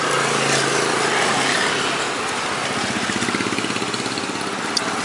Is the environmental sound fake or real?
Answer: real